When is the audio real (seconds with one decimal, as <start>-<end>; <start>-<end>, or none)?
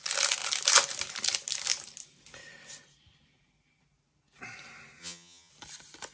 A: 0.0-5.0; 5.5-6.1